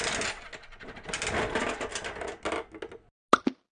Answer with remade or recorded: recorded